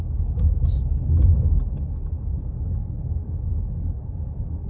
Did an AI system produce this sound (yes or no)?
yes